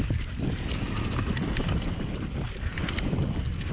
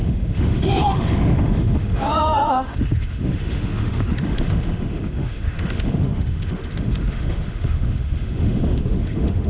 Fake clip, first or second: second